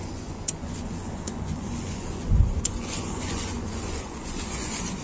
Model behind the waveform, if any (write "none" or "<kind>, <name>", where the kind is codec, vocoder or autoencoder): vocoder, Vocos